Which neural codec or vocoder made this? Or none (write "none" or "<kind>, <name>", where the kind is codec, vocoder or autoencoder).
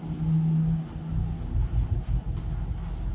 none